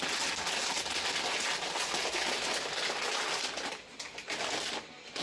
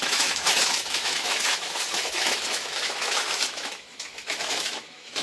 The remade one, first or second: second